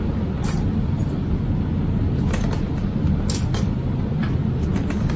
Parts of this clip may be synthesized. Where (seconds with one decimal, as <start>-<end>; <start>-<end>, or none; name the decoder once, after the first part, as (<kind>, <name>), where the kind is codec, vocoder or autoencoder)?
none